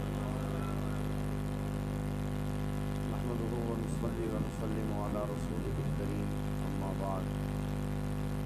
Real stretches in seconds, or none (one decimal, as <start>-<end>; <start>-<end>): 0.0-3.9; 4.6-5.1; 6.0-8.5